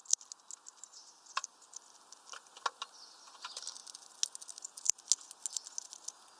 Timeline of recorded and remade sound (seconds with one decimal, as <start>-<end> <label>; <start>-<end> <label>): 0.0-6.4 recorded